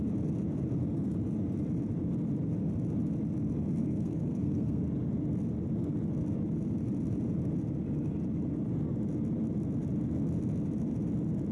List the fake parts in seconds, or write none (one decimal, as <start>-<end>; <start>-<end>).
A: 3.8-4.8